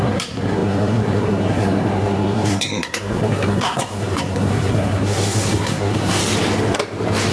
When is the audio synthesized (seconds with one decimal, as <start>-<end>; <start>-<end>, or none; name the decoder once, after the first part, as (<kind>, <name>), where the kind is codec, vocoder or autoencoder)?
0.0-6.2 (codec, SNAC)

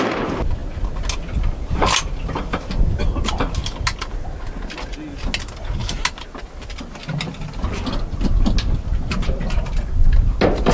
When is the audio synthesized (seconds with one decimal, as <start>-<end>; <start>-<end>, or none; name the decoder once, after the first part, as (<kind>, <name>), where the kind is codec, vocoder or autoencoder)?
none

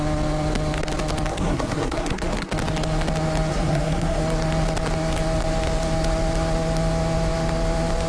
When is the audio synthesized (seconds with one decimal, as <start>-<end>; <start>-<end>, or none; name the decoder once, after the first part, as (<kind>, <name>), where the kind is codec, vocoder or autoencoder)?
1.3-2.5 (codec, SNAC); 3.5-4.2

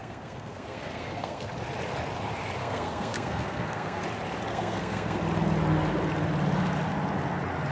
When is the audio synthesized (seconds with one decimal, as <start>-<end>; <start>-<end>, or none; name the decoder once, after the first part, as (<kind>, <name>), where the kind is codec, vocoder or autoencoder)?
0.0-1.5 (codec, SNAC); 2.6-4.0; 4.5-5.2

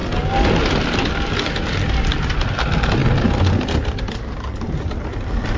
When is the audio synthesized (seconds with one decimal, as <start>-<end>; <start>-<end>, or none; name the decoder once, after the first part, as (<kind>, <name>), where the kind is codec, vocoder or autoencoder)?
none

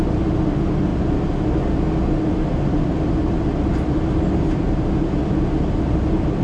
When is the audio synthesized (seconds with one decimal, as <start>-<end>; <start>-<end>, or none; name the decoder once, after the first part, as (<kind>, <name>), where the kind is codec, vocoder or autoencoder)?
none